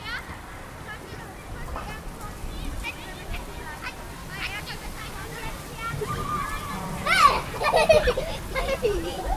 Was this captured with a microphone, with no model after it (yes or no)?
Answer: yes